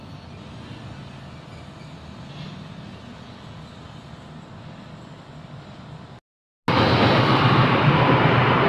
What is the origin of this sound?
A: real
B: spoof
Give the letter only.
A